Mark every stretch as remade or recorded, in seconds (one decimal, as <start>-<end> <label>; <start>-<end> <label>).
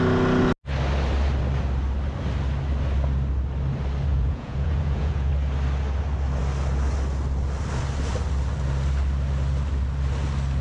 0.0-4.1 recorded; 4.1-5.3 remade; 5.3-10.6 recorded